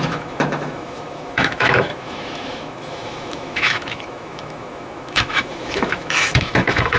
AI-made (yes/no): yes